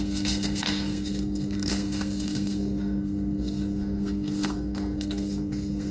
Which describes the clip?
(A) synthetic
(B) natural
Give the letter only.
A